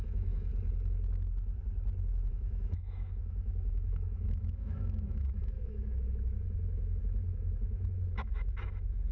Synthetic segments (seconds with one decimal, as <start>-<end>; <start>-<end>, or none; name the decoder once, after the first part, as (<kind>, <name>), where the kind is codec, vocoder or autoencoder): 0.0-0.5 (autoencoder, DAC-VAE); 2.3-9.1